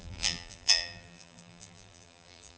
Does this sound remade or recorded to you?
remade